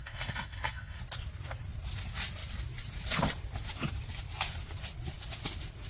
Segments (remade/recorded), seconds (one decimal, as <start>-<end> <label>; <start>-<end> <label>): 0.0-1.0 remade; 1.0-5.9 recorded